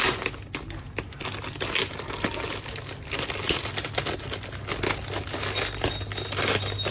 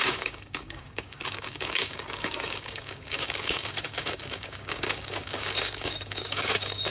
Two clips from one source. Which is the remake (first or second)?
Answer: second